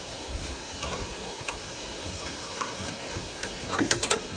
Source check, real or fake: fake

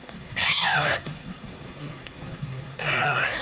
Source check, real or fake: fake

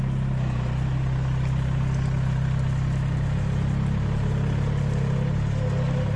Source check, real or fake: real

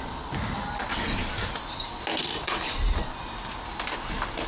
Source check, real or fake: real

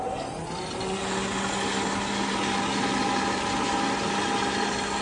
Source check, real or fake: real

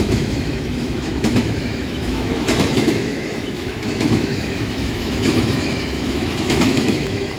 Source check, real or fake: fake